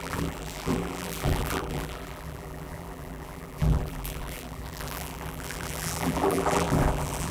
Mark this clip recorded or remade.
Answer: remade